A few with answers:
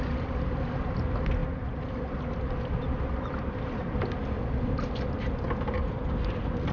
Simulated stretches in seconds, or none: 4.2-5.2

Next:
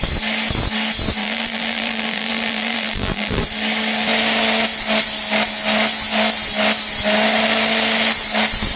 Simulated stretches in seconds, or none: 1.2-3.4

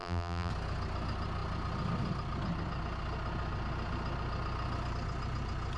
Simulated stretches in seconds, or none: 0.0-0.5

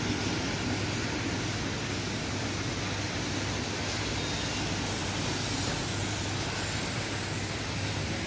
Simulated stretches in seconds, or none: none

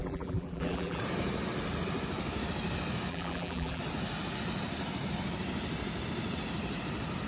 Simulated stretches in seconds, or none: 0.0-1.0; 3.1-3.8